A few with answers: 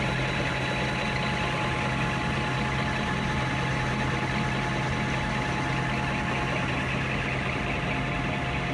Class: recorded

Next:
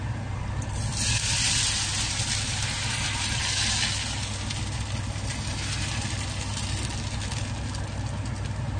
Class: recorded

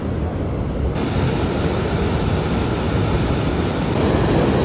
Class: recorded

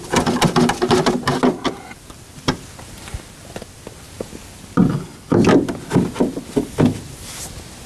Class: recorded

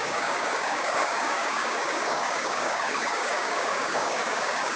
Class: remade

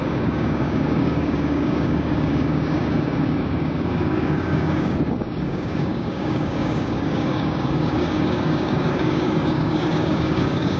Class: remade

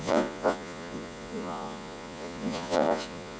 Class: remade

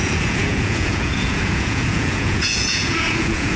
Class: remade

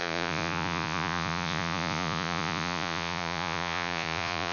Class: remade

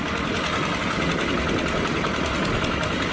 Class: recorded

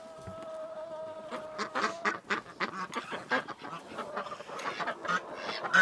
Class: recorded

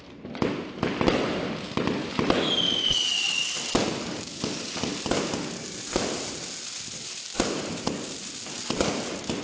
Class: recorded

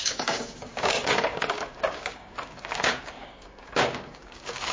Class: remade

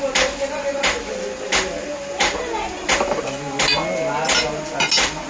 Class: recorded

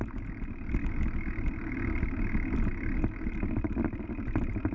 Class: recorded